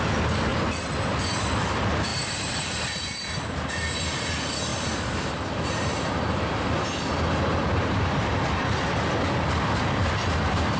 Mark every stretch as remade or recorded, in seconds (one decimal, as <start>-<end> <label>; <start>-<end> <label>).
0.0-2.1 recorded; 2.1-4.0 remade; 4.0-4.7 recorded; 4.7-6.7 remade; 6.7-10.8 recorded